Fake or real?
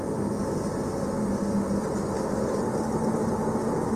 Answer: real